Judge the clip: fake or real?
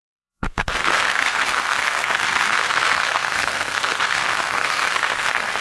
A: fake